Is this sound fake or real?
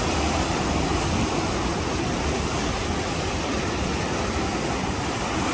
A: real